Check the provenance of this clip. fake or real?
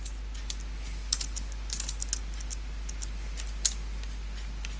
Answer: real